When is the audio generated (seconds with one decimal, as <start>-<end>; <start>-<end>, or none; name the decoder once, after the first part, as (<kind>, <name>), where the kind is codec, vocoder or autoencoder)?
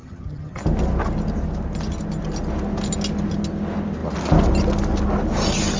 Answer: 0.0-0.6 (vocoder, HiFi-GAN)